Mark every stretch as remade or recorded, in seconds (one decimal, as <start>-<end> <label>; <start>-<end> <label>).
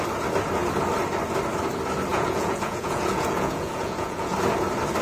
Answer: 0.0-2.1 recorded; 2.1-4.3 remade; 4.3-5.0 recorded